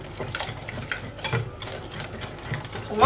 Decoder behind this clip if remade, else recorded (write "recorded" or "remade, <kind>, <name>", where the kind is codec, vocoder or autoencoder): recorded